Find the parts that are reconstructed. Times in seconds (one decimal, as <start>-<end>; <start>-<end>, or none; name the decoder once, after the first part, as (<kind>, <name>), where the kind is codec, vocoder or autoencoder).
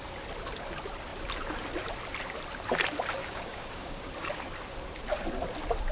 3.2-4.1 (codec, DAC)